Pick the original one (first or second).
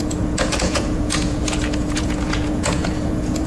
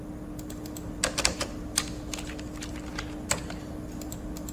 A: second